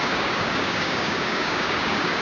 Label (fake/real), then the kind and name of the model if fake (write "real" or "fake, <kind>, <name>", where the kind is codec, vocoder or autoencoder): fake, codec, DAC